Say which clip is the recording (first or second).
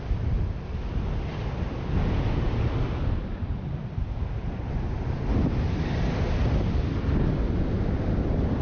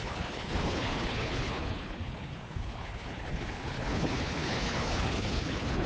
first